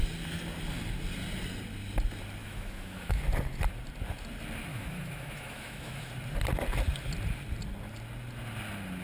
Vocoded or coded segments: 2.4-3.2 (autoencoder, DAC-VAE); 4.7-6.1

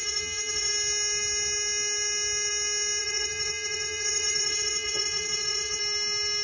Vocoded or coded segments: 0.0-0.7 (vocoder, Vocos); 3.0-5.8